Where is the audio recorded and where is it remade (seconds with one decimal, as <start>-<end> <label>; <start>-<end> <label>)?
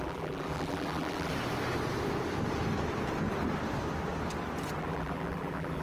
0.0-1.3 remade; 1.3-4.8 recorded; 4.8-5.8 remade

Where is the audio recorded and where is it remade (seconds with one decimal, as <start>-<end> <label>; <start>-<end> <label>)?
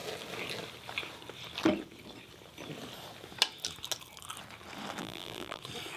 0.0-5.0 recorded; 5.0-5.6 remade; 5.6-6.0 recorded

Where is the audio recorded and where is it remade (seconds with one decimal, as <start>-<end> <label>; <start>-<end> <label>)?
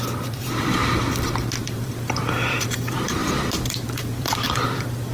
0.0-0.8 remade; 0.8-1.6 recorded; 1.6-3.2 remade; 3.2-3.7 recorded; 3.7-5.1 remade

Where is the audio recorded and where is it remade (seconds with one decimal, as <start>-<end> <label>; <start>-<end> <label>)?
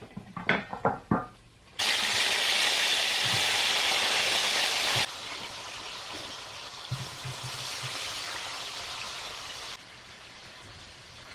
0.0-0.7 recorded; 0.7-3.4 remade; 3.4-9.3 recorded; 9.3-9.8 remade; 9.8-11.3 recorded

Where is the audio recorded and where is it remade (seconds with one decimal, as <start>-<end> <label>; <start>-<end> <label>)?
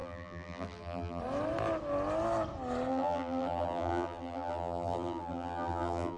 0.0-1.2 remade; 1.2-2.9 recorded; 2.9-6.2 remade